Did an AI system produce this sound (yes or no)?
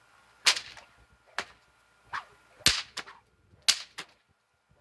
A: no